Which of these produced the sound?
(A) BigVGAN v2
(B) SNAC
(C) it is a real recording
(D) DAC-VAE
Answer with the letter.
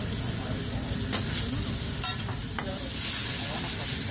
C